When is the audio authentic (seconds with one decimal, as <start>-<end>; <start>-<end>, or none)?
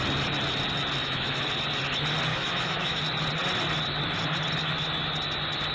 0.0-1.0; 1.5-2.3; 3.0-5.7